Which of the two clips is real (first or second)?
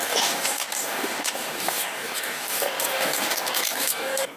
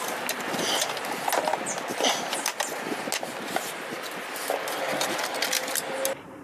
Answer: second